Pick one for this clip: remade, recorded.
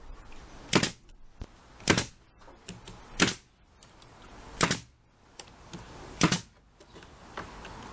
recorded